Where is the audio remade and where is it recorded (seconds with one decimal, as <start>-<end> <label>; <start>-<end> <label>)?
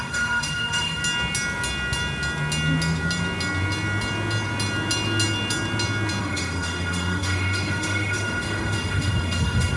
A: 0.0-1.0 remade; 1.0-6.2 recorded; 6.2-9.8 remade